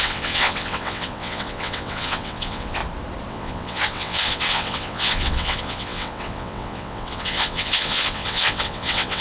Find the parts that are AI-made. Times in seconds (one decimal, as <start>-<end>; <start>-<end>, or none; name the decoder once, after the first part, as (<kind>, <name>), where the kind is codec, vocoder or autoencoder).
0.0-2.8 (vocoder, WaveNeXt); 3.3-9.2